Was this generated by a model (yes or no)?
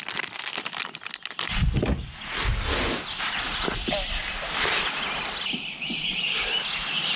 no